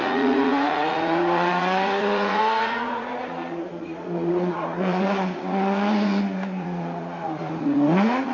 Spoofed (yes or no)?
yes